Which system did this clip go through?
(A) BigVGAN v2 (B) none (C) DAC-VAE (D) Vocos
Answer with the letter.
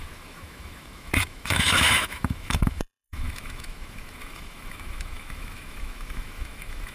C